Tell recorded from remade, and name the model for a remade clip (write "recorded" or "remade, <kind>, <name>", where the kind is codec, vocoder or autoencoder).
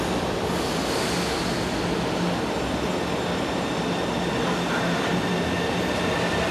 recorded